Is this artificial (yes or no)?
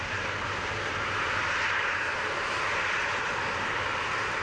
no